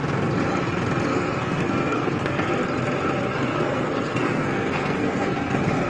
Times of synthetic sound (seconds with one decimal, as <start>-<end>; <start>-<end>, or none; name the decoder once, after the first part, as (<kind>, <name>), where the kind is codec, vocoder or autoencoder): 1.1-2.5 (codec, SNAC); 3.5-5.9